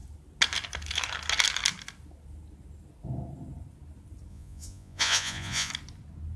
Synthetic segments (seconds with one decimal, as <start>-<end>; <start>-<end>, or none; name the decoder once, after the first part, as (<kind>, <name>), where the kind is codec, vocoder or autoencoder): 4.3-5.7 (vocoder, Vocos)